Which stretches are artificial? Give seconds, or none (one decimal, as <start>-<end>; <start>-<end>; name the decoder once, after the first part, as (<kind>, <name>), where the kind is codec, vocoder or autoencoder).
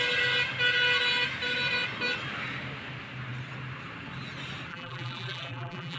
4.7-6.0 (vocoder, BigVGAN v2)